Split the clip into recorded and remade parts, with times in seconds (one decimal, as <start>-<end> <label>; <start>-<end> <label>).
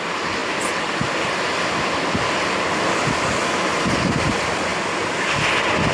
0.0-5.9 recorded